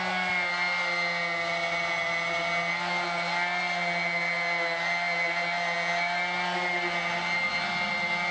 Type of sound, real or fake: real